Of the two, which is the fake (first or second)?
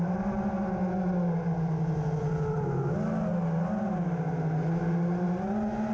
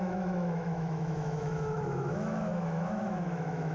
second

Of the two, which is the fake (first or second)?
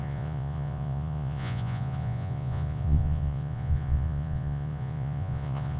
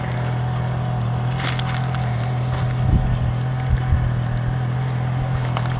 first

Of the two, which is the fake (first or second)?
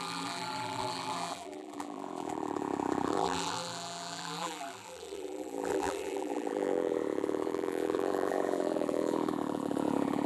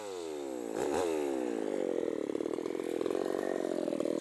first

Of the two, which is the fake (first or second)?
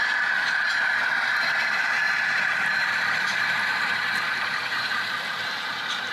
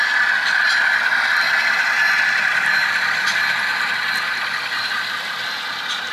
first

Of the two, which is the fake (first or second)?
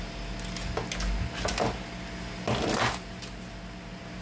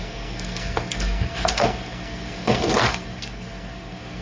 second